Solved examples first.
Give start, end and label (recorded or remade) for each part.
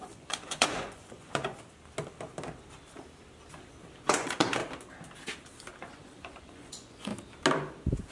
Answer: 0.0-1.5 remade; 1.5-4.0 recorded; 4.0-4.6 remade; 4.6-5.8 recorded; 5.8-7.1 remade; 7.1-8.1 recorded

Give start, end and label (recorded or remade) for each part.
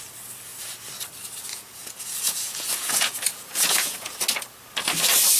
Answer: 0.0-1.5 recorded; 1.5-4.1 remade; 4.1-5.4 recorded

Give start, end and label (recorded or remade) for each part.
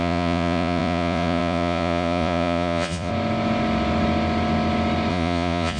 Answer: 0.0-3.1 remade; 3.1-5.1 recorded; 5.1-5.8 remade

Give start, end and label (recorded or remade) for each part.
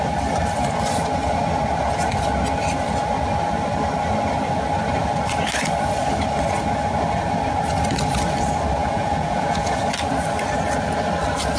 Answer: 0.0-8.8 recorded; 8.8-9.8 remade; 9.8-11.6 recorded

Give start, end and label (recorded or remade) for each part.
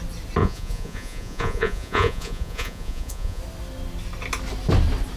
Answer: 0.0-0.4 recorded; 0.4-3.4 remade; 3.4-5.2 recorded